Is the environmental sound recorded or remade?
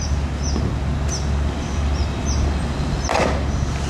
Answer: recorded